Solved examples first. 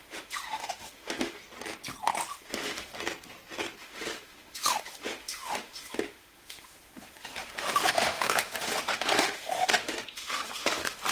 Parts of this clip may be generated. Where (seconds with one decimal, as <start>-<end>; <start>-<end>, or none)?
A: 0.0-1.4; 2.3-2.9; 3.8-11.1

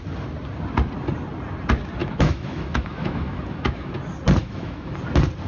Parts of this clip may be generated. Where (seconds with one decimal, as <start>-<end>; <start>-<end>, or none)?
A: 2.0-3.9; 4.4-4.9

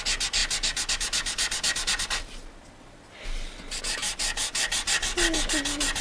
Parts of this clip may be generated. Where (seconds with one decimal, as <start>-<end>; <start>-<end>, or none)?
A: none

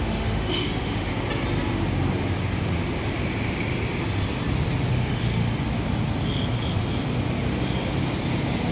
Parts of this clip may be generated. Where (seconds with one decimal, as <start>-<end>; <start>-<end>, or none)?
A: 0.0-1.1; 4.9-5.4

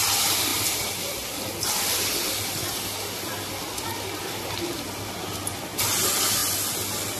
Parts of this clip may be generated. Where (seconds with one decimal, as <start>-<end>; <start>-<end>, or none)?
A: none

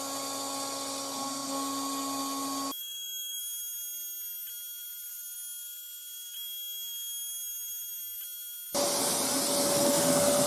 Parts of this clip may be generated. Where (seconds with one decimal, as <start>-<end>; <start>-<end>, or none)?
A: 2.8-3.4